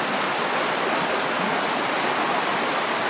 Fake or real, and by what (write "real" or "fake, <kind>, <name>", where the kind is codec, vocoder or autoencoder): real